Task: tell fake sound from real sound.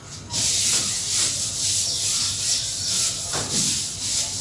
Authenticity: real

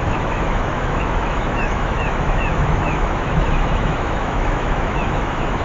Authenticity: fake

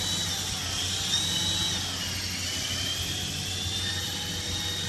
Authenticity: real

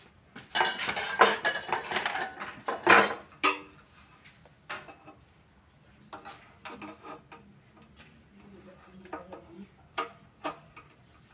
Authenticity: real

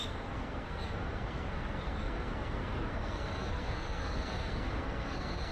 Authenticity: fake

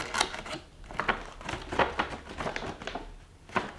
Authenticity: real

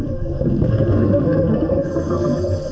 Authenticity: fake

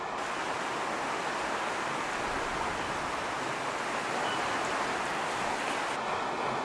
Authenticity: real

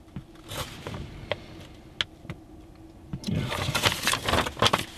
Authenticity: real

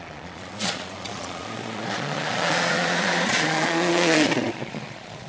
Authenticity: fake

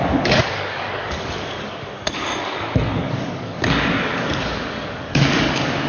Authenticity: fake